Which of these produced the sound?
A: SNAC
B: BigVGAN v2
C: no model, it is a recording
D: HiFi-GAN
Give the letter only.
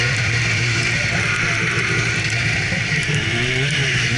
B